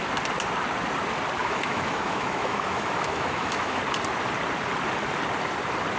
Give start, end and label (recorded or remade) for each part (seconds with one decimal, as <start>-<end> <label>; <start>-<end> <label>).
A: 0.0-1.4 recorded; 1.4-3.8 remade; 3.8-6.0 recorded